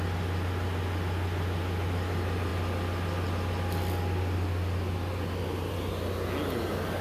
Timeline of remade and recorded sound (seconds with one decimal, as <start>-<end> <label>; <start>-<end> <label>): 0.0-7.0 recorded